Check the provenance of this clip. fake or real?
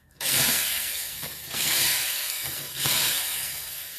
fake